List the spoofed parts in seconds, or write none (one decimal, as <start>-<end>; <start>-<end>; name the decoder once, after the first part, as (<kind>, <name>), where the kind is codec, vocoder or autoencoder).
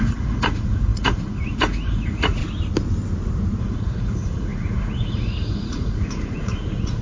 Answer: 0.0-2.4 (vocoder, Vocos); 3.6-7.0